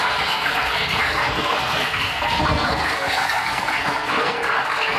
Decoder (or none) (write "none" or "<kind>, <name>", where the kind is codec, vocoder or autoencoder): codec, SNAC